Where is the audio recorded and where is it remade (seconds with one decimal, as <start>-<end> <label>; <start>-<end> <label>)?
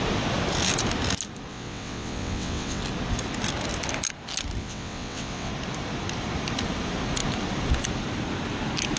0.0-1.5 recorded; 1.5-2.8 remade; 2.8-4.6 recorded; 4.6-5.5 remade; 5.5-9.0 recorded